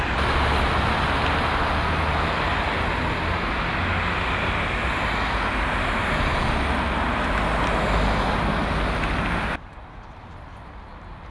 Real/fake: real